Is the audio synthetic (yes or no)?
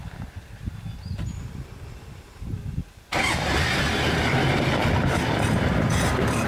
no